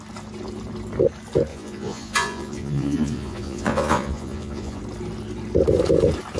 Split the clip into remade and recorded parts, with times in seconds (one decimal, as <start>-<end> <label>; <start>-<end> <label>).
0.0-1.5 recorded; 1.5-4.8 remade; 4.8-6.4 recorded